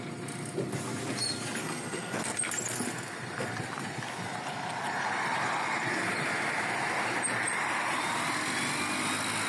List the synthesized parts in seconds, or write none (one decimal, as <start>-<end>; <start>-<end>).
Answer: 1.6-2.3